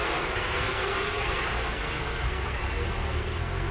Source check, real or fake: fake